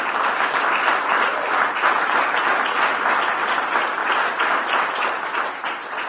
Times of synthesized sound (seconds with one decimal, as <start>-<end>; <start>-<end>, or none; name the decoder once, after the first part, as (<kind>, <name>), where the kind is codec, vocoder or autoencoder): none